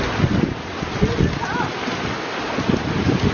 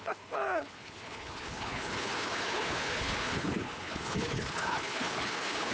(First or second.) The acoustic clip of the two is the first